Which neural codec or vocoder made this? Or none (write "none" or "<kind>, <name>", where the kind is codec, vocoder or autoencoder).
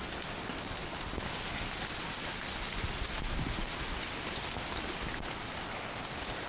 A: none